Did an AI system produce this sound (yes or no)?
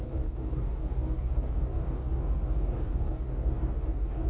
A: yes